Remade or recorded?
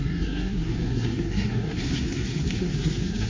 remade